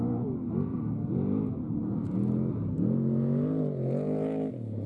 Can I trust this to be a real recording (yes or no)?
yes